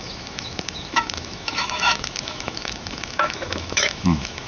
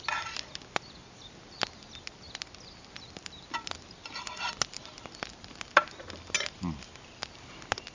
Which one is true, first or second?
second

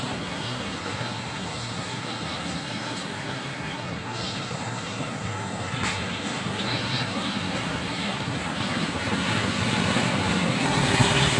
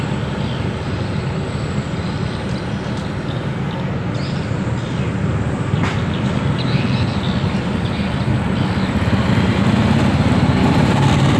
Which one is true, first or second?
second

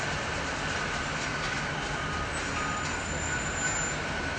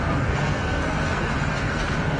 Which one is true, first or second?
first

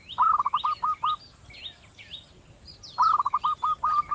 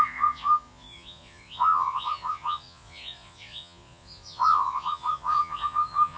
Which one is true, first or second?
first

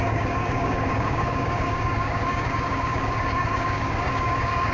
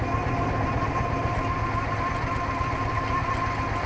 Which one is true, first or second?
second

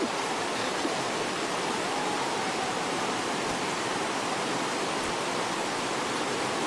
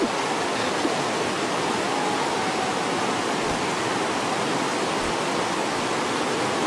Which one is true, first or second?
second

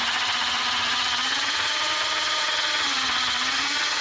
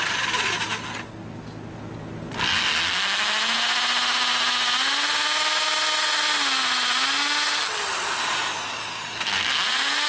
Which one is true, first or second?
second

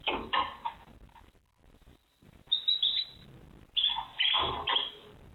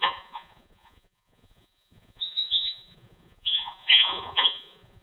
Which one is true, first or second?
first